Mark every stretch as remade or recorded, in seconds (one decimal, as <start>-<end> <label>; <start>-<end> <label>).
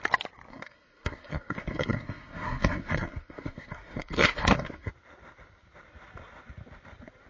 0.0-0.5 recorded; 0.5-4.9 remade; 4.9-7.3 recorded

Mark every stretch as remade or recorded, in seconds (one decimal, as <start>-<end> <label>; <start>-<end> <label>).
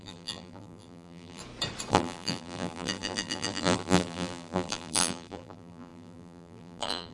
0.0-1.4 remade; 1.4-1.9 recorded; 1.9-7.1 remade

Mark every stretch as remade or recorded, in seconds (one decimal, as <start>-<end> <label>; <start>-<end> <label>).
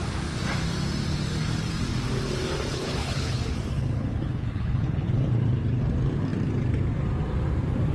0.0-2.7 recorded; 2.7-5.2 remade; 5.2-7.9 recorded